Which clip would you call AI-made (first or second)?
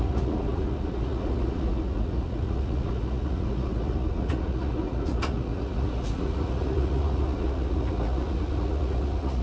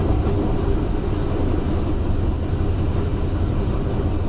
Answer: first